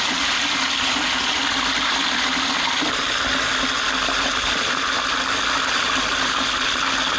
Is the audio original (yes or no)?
yes